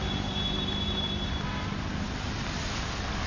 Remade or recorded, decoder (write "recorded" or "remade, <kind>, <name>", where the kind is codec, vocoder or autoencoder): recorded